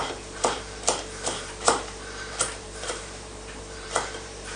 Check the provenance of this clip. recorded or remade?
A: remade